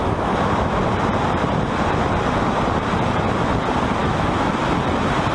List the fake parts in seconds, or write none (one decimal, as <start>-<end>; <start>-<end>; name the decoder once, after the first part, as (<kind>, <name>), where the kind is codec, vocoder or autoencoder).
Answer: 0.0-0.8 (autoencoder, DAC-VAE); 4.0-4.5